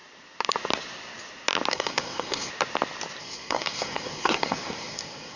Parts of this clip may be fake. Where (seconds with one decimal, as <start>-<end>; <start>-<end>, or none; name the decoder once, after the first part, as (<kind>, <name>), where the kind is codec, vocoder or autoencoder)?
1.7-2.5 (codec, SNAC); 3.2-5.4